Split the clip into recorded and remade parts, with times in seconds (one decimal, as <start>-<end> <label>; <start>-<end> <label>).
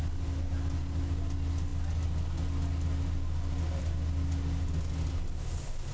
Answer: 0.0-5.9 recorded